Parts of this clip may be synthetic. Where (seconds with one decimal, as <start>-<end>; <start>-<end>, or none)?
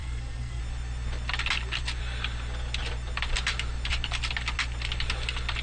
0.0-0.6